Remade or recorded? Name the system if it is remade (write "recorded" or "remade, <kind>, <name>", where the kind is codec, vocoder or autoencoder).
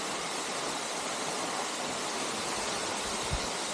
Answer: recorded